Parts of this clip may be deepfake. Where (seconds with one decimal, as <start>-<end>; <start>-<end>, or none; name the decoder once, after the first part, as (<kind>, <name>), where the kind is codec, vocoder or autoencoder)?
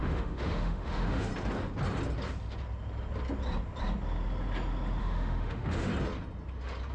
0.0-1.3 (autoencoder, DAC-VAE); 5.0-5.9